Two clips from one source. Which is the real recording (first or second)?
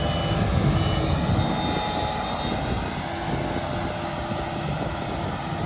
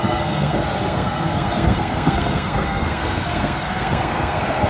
first